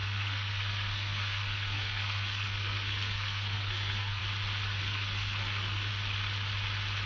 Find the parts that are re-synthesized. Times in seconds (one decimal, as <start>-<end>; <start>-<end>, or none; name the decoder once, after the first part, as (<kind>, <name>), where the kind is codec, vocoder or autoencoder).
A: 0.0-4.2 (codec, SNAC); 4.8-5.9